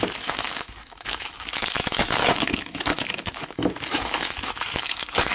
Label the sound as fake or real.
fake